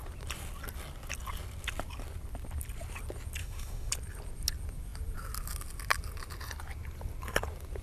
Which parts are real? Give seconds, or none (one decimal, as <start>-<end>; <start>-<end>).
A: 0.0-3.4; 3.9-7.8